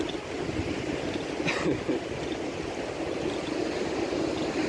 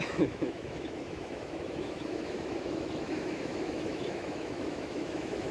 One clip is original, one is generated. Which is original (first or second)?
first